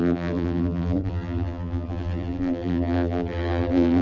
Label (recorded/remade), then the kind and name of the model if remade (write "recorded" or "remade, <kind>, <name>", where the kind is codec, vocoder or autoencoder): remade, vocoder, BigVGAN v2